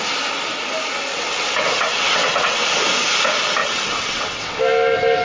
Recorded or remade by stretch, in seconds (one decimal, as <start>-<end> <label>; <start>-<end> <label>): 0.0-1.1 recorded; 1.1-2.8 remade; 2.8-3.6 recorded; 3.6-4.6 remade; 4.6-5.2 recorded